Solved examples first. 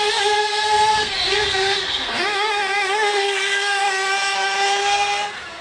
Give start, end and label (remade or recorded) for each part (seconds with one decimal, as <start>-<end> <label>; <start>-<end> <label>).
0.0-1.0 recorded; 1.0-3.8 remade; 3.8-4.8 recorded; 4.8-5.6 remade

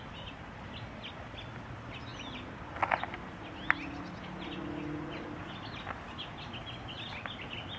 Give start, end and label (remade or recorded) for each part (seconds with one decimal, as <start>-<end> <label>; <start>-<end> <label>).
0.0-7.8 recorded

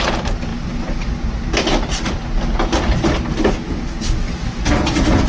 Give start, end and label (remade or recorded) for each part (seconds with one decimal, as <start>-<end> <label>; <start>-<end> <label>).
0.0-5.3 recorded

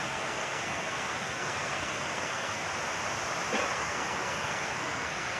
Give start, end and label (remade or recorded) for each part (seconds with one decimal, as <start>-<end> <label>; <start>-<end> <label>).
0.0-2.6 remade; 2.6-3.7 recorded; 3.7-5.4 remade

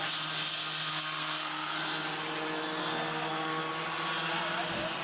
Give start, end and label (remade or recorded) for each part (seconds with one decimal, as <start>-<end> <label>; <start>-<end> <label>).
0.0-0.9 recorded; 0.9-1.8 remade; 1.8-2.8 recorded; 2.8-3.7 remade; 3.7-5.0 recorded

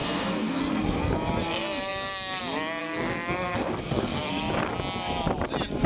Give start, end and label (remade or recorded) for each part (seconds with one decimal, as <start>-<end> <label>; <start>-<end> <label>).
0.0-0.6 remade; 0.6-2.8 recorded; 2.8-4.3 remade; 4.3-5.9 recorded